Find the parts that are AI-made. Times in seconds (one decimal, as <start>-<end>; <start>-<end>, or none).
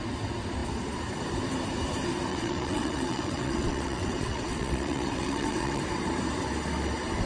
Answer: 2.3-5.8